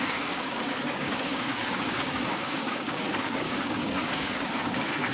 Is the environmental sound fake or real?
fake